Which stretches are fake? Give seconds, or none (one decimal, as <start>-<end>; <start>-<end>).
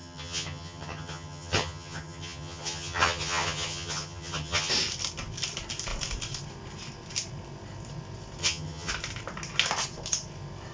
0.0-4.7; 8.4-8.9